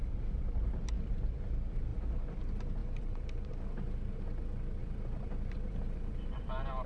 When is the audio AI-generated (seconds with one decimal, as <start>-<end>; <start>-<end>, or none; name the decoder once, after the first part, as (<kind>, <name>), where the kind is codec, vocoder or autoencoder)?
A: 1.9-2.4 (vocoder, BigVGAN v2); 2.8-3.5; 4.8-6.9

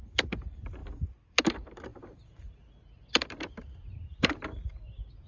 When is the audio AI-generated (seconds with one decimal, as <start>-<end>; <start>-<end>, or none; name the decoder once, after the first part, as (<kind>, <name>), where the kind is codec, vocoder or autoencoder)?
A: 0.0-0.8 (vocoder, BigVGAN v2); 1.3-5.3

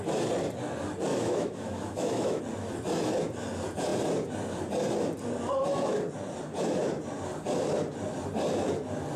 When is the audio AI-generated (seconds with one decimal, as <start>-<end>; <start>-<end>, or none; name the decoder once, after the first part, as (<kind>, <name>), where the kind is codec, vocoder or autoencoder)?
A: 1.1-2.4 (autoencoder, DAC-VAE)

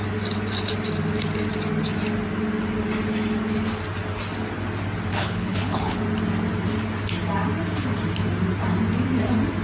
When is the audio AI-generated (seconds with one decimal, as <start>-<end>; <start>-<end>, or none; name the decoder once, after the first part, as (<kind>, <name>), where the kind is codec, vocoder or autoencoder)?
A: 5.1-6.0 (codec, HILCodec)

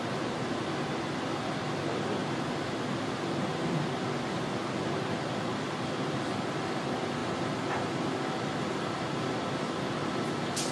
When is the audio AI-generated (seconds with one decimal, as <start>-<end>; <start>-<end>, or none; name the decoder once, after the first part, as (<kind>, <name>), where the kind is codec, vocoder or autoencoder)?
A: none